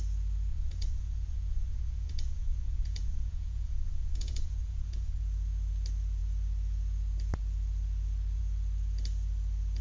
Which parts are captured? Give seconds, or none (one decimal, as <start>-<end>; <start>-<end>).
0.0-0.5; 5.2-9.8